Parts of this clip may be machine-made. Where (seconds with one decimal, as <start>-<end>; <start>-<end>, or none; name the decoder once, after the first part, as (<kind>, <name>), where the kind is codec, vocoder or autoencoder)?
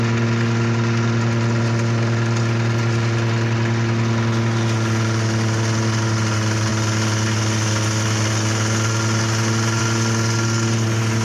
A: none